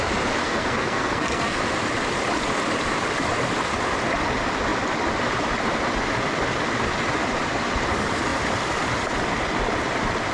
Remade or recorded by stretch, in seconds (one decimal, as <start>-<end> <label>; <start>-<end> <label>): 0.0-0.4 recorded; 0.4-1.6 remade; 1.6-10.3 recorded